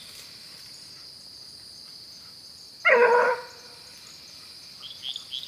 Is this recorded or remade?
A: recorded